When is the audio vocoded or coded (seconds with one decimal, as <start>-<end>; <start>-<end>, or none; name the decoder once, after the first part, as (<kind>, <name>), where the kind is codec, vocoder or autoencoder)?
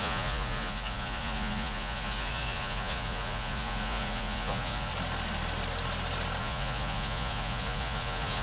0.0-4.9 (vocoder, Vocos); 6.4-8.4